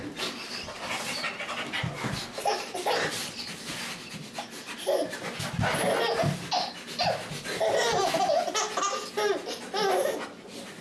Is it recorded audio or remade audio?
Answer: recorded